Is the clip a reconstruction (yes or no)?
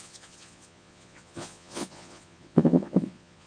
yes